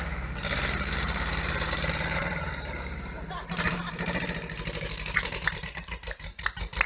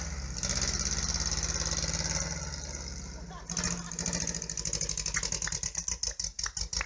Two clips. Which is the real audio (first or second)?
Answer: second